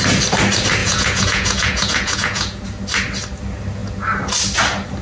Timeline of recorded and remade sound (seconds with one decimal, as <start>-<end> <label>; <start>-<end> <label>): 0.0-0.8 recorded; 0.8-2.6 remade; 2.6-5.0 recorded